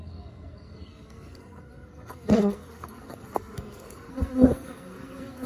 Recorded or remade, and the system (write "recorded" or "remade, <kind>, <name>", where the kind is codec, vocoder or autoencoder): remade, codec, SNAC